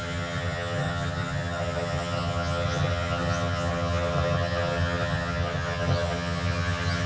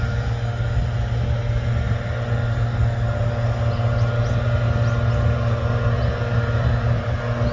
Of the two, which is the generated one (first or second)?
first